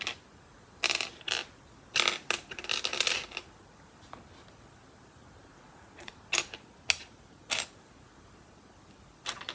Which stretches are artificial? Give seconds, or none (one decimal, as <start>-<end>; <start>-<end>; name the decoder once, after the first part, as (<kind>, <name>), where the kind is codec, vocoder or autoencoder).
5.5-6.1 (vocoder, Vocos)